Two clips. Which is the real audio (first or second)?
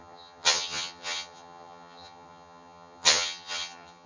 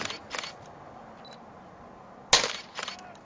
second